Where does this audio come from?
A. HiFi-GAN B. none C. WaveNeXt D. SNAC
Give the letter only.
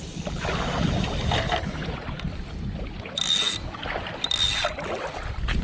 B